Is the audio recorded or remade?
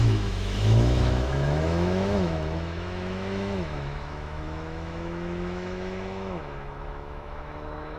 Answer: remade